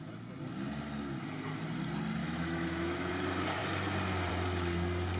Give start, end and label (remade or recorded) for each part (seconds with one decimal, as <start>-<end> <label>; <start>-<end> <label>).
0.0-2.2 recorded; 2.2-3.1 remade; 3.1-5.2 recorded